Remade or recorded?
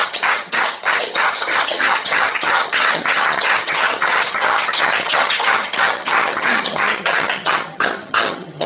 remade